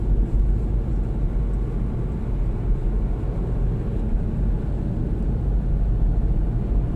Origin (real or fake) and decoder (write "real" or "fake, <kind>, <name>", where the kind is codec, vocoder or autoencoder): real